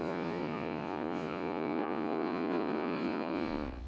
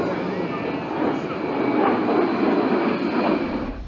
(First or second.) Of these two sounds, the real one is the second